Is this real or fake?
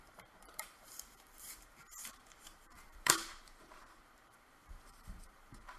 fake